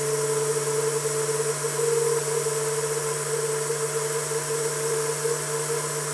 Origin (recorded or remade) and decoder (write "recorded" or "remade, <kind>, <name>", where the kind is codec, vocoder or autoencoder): recorded